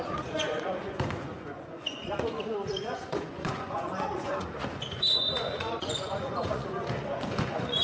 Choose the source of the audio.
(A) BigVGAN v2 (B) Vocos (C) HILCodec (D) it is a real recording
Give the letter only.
B